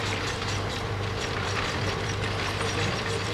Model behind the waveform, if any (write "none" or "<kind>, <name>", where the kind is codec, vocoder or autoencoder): vocoder, BigVGAN v2